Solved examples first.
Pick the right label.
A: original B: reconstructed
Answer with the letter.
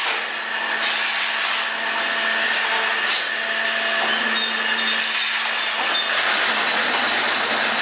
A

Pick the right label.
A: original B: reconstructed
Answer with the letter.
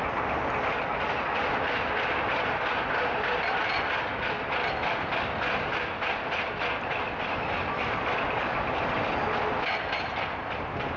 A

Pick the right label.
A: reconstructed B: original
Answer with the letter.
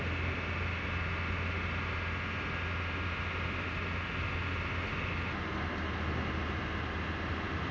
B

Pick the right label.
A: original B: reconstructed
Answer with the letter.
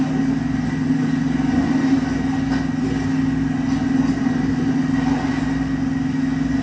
A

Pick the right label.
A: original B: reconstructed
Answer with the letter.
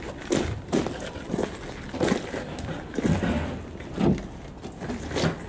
A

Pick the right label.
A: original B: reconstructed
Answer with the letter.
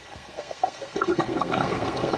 B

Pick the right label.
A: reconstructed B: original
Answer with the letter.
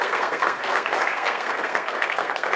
A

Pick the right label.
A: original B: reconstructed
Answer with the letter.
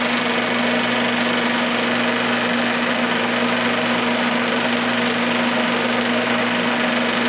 A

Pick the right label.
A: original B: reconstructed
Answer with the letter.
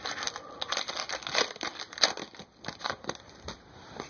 A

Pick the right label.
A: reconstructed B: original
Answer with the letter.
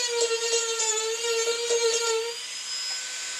B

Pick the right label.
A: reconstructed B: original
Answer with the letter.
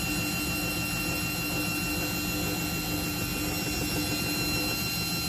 B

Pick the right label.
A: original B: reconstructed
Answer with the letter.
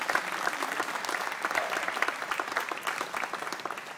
A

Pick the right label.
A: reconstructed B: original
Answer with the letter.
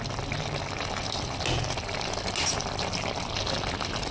B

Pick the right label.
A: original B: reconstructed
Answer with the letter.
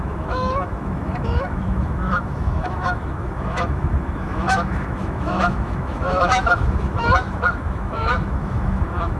B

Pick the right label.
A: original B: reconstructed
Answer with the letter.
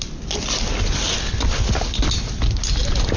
A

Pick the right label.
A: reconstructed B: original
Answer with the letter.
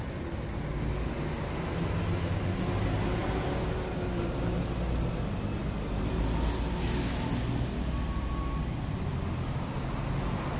B